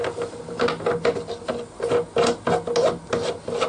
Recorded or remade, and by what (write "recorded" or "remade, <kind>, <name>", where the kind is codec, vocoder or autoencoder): recorded